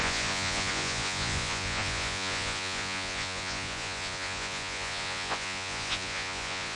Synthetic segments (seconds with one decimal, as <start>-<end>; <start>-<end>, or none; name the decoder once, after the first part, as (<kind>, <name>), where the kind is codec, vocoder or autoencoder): 0.0-6.8 (vocoder, Vocos)